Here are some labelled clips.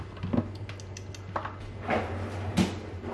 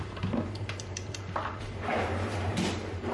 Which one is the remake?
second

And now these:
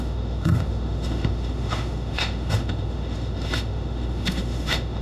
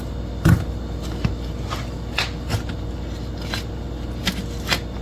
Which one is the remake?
first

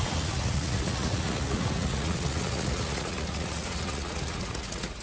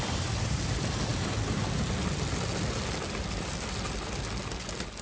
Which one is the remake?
first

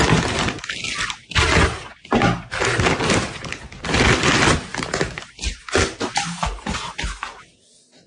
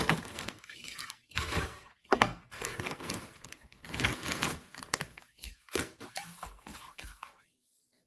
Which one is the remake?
second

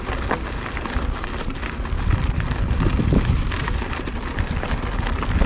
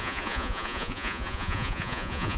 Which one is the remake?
second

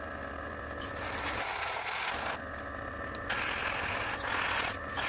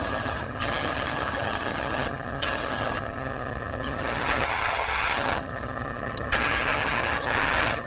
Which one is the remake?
second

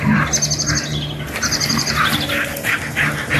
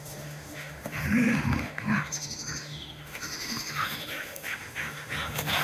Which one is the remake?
second